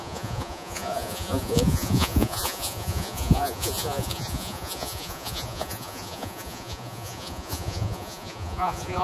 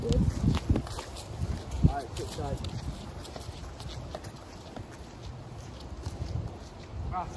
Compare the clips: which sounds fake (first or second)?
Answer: first